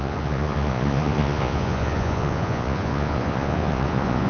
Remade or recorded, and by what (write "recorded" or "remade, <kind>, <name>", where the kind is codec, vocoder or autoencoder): remade, vocoder, Vocos